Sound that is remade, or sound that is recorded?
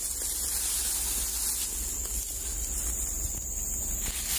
recorded